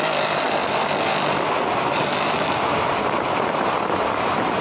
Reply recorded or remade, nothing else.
recorded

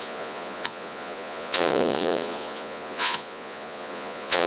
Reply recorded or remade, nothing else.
remade